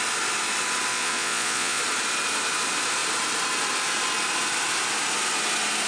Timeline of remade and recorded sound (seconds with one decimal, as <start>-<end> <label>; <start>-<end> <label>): 0.0-0.9 recorded; 0.9-1.8 remade; 1.8-5.9 recorded

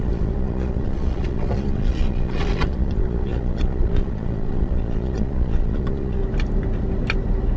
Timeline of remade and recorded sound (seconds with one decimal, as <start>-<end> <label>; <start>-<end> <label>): 0.0-6.2 remade; 6.2-7.6 recorded

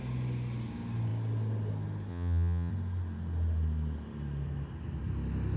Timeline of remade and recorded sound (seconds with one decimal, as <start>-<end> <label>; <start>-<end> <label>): 0.0-2.1 recorded; 2.1-2.7 remade; 2.7-5.6 recorded

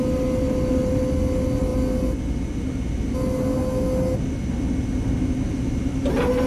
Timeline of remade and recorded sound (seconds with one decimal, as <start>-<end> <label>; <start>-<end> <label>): 0.0-6.5 recorded

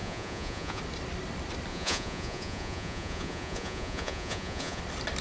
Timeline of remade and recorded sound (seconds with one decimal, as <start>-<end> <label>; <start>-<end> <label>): 0.0-0.8 remade; 0.8-1.7 recorded; 1.7-4.8 remade; 4.8-5.2 recorded

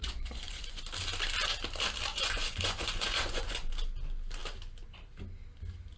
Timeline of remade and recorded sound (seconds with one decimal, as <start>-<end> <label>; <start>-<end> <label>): 0.0-0.8 remade; 0.8-2.1 recorded; 2.1-3.7 remade; 3.7-6.0 recorded